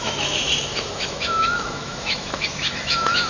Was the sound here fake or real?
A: fake